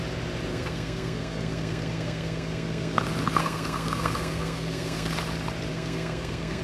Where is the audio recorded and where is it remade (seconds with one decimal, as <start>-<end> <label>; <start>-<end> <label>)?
0.0-0.5 recorded; 0.5-3.0 remade; 3.0-3.4 recorded; 3.4-5.1 remade; 5.1-5.7 recorded; 5.7-6.6 remade